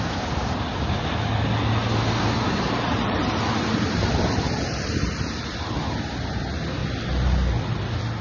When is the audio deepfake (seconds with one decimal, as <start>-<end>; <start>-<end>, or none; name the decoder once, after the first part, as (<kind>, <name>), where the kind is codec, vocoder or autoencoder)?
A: 0.0-0.7 (vocoder, BigVGAN v2); 2.2-6.8

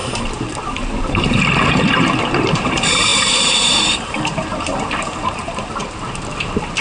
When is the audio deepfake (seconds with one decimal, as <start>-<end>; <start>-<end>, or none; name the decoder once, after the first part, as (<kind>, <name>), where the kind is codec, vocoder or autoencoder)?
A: 0.0-5.8 (vocoder, BigVGAN v2)

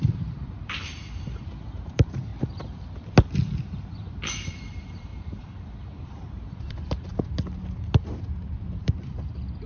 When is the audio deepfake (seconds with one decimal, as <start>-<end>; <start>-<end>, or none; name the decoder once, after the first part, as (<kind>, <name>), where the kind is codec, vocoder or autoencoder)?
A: 0.0-2.3 (vocoder, BigVGAN v2); 4.5-7.1; 8.4-9.7

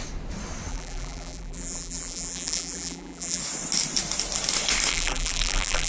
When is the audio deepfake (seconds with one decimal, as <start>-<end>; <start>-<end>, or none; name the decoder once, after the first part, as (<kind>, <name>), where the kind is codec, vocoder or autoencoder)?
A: 0.7-3.4 (vocoder, BigVGAN v2); 4.9-5.9

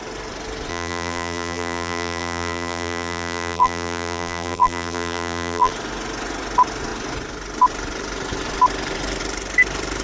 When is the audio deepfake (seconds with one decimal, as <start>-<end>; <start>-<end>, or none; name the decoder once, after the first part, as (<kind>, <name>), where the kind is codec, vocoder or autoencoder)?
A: 0.7-5.7 (vocoder, BigVGAN v2)

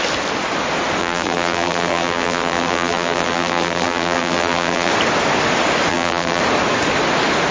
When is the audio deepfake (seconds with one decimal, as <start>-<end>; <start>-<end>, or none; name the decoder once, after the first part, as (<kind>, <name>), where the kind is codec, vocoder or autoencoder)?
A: 1.0-4.9 (vocoder, BigVGAN v2); 5.9-6.4

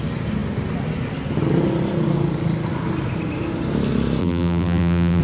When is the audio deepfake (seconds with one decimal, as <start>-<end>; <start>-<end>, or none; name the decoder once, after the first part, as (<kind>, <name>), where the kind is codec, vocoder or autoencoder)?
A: 4.2-5.2 (vocoder, BigVGAN v2)